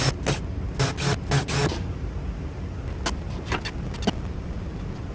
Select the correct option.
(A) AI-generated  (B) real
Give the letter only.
B